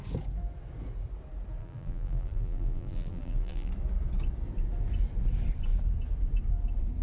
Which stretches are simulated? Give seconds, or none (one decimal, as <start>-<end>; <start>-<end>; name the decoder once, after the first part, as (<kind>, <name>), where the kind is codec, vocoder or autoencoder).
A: 1.6-3.7 (vocoder, BigVGAN v2)